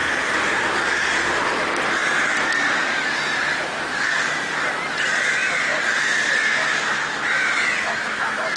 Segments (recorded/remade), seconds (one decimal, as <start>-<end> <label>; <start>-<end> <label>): 0.0-8.6 recorded